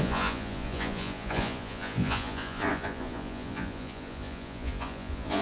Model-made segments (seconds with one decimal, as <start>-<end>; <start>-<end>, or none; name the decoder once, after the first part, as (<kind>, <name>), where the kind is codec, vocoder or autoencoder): 0.0-5.4 (vocoder, Vocos)